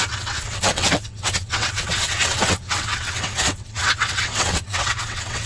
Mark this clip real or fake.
fake